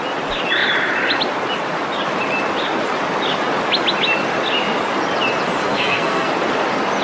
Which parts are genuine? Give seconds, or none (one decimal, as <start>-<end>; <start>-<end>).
0.0-5.6; 6.3-7.0